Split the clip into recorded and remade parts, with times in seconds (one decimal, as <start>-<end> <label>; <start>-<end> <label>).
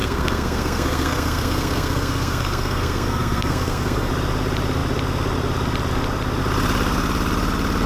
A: 0.0-4.1 remade; 4.1-7.9 recorded